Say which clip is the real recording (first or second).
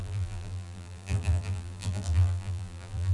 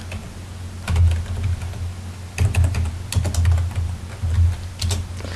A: second